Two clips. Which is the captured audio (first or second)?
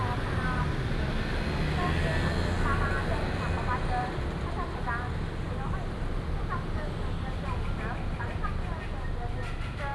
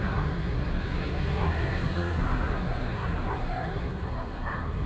first